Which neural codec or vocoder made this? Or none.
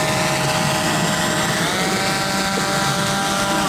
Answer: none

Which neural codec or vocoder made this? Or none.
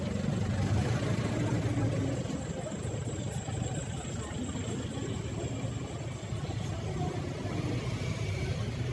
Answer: none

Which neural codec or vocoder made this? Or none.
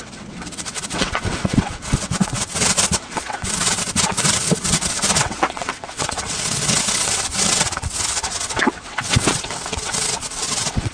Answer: vocoder, WaveNeXt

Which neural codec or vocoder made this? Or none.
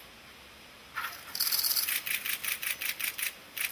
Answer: none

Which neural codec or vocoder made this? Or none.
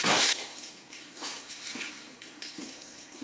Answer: codec, SNAC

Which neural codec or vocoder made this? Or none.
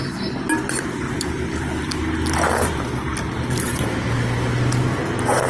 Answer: none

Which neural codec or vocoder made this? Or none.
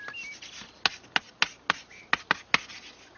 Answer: none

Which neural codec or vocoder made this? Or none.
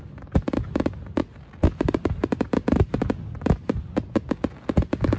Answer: none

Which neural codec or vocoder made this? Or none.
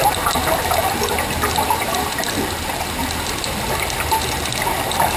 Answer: none